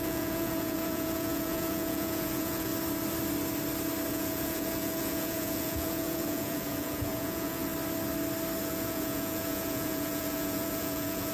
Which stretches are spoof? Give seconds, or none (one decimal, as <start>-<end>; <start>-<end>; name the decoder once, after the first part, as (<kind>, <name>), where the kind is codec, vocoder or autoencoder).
0.0-2.7 (vocoder, Vocos); 4.1-7.7; 8.6-11.3